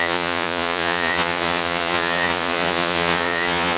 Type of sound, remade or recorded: remade